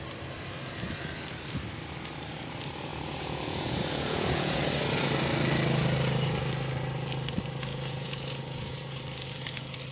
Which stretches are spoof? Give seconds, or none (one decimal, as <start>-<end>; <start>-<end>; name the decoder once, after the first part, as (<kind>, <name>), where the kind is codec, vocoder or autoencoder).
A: 2.9-4.6 (vocoder, Vocos); 7.7-9.0